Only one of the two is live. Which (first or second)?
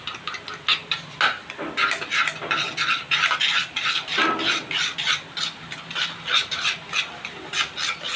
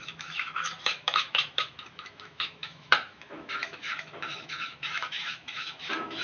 first